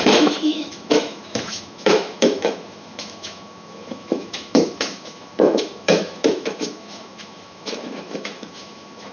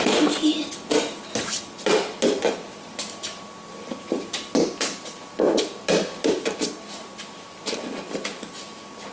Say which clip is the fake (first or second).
first